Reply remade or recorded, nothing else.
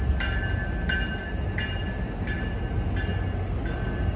recorded